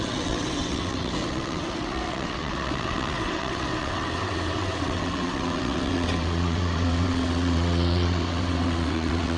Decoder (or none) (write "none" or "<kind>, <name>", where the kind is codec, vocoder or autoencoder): vocoder, WaveNeXt